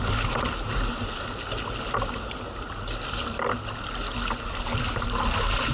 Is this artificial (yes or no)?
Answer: no